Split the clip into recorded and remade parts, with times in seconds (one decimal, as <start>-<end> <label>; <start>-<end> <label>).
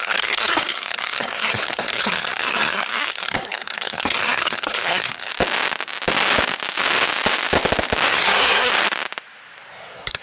0.0-5.3 remade; 5.3-8.1 recorded; 8.1-8.7 remade; 8.7-9.7 recorded; 9.7-10.2 remade